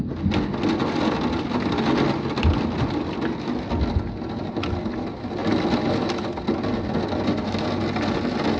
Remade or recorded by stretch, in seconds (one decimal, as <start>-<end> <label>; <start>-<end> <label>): 0.0-8.6 recorded